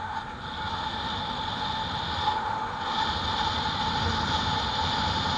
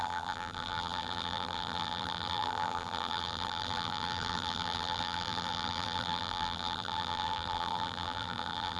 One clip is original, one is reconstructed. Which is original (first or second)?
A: first